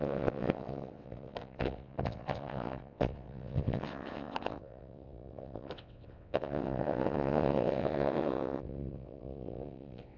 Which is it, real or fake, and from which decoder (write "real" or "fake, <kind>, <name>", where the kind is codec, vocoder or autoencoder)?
fake, vocoder, WaveNeXt